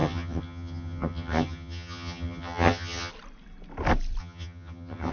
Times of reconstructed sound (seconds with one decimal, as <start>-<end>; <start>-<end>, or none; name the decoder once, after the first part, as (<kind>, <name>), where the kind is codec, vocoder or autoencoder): 0.0-3.1 (vocoder, HiFi-GAN); 4.2-5.1